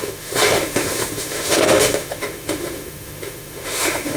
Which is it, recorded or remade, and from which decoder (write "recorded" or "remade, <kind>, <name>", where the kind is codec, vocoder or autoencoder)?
remade, autoencoder, DAC-VAE